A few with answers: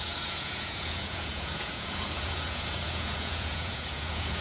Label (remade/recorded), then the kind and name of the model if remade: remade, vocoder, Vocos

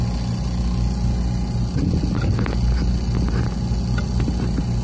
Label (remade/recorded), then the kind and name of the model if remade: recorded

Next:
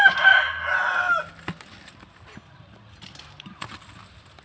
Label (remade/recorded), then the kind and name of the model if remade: recorded